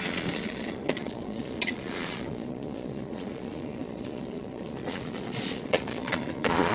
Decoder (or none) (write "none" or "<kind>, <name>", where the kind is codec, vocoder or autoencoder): vocoder, Vocos